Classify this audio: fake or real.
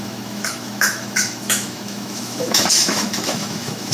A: fake